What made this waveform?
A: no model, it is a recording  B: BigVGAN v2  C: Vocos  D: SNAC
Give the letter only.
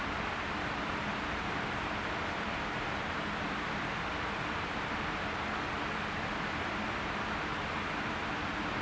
B